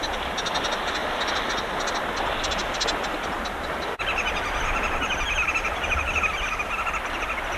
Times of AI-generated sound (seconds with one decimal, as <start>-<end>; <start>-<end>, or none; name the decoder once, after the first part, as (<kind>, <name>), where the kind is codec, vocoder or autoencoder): none